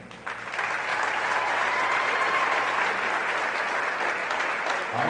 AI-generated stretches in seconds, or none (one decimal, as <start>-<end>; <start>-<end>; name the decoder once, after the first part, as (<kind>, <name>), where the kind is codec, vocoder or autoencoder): 0.9-3.4 (vocoder, BigVGAN v2); 4.2-5.1